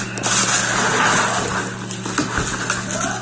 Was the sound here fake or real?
real